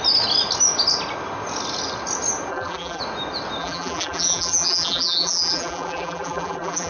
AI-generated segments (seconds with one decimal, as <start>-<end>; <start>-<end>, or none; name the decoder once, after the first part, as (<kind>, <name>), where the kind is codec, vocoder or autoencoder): 2.5-3.0 (vocoder, BigVGAN v2); 3.6-6.9